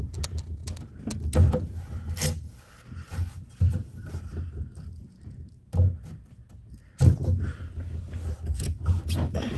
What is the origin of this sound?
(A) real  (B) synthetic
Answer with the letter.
A